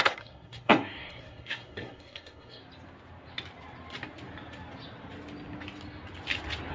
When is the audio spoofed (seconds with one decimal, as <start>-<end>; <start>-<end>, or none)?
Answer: 0.0-2.6